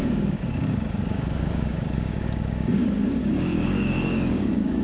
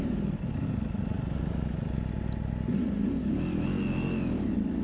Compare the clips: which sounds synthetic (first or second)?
first